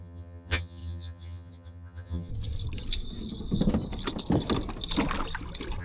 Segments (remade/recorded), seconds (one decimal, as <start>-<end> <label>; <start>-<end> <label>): 0.0-2.3 remade; 2.3-5.8 recorded